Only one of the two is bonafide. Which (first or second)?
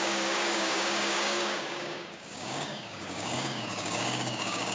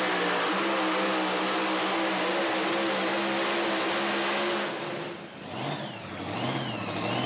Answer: second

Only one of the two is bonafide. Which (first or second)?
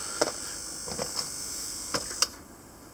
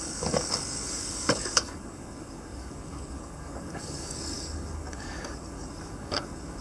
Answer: first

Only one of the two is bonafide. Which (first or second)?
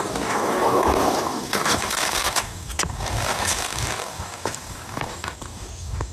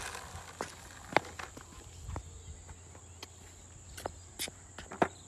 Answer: second